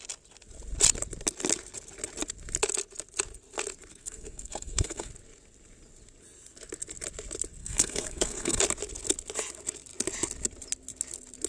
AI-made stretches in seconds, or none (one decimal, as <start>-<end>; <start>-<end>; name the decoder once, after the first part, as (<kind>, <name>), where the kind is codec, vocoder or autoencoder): 3.9-5.1 (codec, SNAC); 7.6-8.6